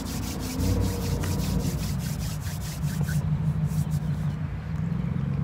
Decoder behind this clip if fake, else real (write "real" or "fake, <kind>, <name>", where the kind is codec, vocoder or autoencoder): real